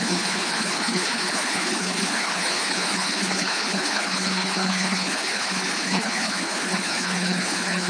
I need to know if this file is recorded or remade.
remade